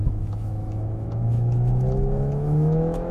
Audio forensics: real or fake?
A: fake